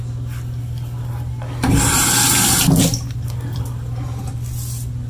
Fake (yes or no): no